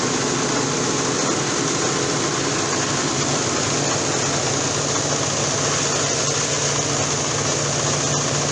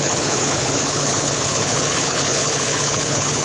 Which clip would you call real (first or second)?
first